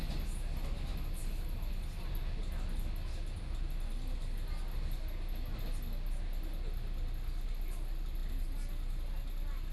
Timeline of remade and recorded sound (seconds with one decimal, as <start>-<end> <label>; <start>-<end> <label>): 0.0-9.7 recorded